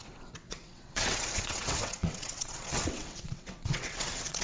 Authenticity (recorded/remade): remade